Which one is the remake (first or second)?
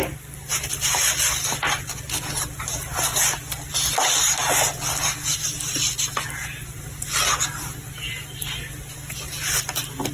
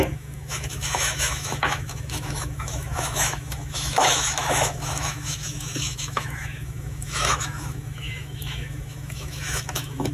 second